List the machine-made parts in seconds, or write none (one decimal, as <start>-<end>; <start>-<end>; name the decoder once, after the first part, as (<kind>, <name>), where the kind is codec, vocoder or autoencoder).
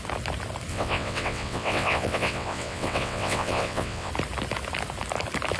0.7-4.1 (vocoder, WaveNeXt)